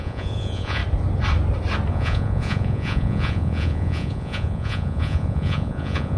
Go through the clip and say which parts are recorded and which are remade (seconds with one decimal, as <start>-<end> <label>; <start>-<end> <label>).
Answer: 0.0-0.8 remade; 0.8-1.9 recorded; 1.9-6.2 remade